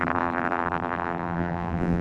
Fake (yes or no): yes